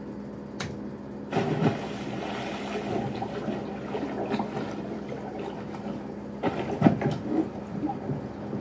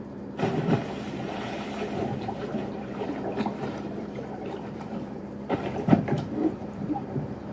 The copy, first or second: second